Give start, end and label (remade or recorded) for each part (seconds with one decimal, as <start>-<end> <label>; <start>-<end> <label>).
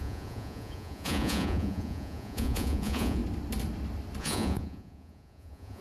0.0-3.2 remade; 3.2-4.2 recorded; 4.2-5.8 remade